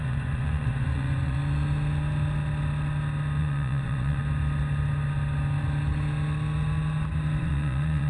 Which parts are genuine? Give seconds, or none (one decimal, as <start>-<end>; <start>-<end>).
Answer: 1.4-3.4; 4.2-7.4